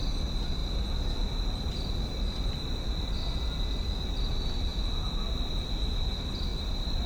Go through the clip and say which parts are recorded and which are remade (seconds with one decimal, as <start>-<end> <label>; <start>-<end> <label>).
0.0-6.5 recorded; 6.5-7.1 remade